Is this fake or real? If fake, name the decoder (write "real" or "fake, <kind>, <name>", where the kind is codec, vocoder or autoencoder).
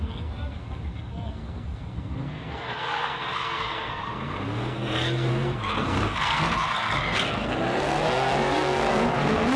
fake, codec, SNAC